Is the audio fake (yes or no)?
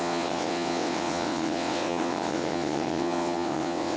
yes